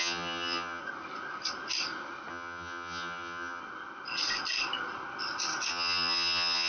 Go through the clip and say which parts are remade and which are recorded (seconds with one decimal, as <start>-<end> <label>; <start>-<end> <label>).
0.0-0.8 remade; 0.8-2.3 recorded; 2.3-3.6 remade; 3.6-5.7 recorded; 5.7-6.7 remade